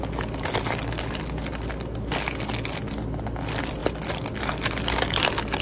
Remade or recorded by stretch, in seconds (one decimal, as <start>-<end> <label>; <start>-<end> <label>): 0.0-5.6 recorded